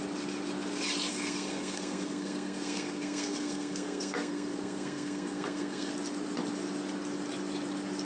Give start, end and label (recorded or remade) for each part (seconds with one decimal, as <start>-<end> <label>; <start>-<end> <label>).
0.0-1.1 recorded; 1.1-5.9 remade; 5.9-8.0 recorded